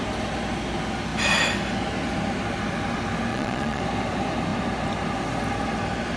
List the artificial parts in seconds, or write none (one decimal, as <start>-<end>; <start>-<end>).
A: 3.3-3.8